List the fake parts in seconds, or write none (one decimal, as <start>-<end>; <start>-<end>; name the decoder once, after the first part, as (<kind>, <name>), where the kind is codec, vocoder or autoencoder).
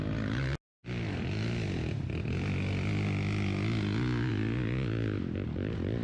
none